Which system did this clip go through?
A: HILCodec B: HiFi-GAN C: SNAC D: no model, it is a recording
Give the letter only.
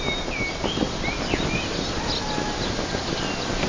D